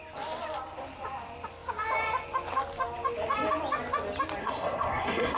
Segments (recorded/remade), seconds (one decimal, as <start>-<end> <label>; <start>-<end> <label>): 0.0-4.4 recorded; 4.4-5.4 remade